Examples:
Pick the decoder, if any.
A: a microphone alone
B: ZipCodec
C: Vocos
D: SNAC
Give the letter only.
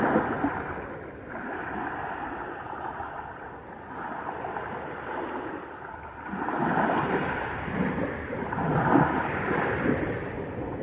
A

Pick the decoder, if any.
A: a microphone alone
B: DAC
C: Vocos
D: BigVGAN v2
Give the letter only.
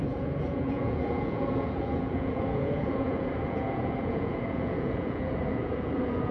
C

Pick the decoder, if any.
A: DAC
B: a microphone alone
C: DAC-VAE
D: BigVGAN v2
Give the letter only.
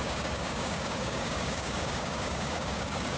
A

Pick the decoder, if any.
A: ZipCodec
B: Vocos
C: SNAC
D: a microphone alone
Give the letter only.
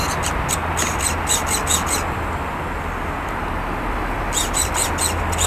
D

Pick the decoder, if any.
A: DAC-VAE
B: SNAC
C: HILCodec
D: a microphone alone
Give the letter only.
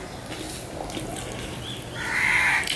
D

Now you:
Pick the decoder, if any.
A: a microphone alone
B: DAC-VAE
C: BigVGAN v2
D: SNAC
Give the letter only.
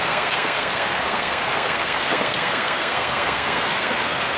D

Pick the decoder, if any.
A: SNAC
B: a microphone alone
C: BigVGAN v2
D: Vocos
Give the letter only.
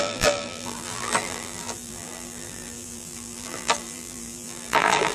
C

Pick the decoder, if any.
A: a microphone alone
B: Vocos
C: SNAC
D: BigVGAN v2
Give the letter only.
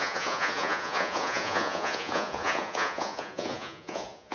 B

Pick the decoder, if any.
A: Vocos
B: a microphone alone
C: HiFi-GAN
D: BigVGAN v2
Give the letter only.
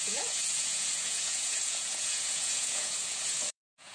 A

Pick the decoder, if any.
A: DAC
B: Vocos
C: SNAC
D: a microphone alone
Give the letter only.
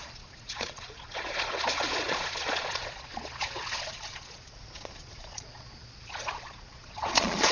B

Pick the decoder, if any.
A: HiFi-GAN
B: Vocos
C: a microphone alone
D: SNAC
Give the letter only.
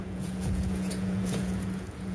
B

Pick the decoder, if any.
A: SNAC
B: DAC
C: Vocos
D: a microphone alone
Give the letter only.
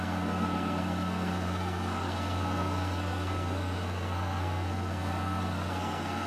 A